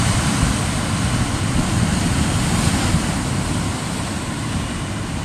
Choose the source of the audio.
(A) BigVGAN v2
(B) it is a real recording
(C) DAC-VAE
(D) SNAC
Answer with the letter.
B